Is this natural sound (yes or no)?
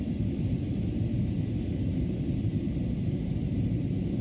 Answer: no